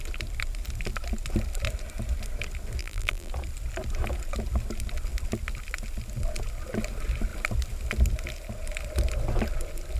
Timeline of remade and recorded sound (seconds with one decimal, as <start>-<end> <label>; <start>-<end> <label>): 0.0-2.8 recorded; 2.8-3.3 remade; 3.3-10.0 recorded